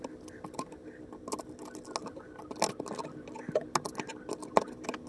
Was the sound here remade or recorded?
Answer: recorded